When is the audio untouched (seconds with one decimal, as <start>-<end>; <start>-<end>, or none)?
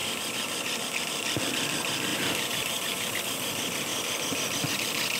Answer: 0.0-2.1; 3.2-5.2